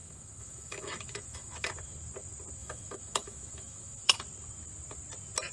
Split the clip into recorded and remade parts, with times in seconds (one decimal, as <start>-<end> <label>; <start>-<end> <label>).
0.0-1.7 remade; 1.7-2.6 recorded; 2.6-4.2 remade; 4.2-5.5 recorded